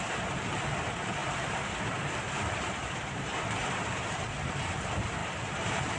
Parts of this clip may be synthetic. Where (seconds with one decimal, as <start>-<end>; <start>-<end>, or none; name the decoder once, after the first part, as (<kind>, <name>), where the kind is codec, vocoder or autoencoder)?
1.2-4.5 (vocoder, BigVGAN v2); 5.2-6.0